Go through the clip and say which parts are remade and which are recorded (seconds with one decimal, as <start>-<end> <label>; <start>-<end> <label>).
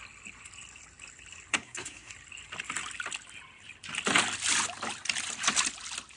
0.0-1.5 recorded; 1.5-2.1 remade; 2.1-6.2 recorded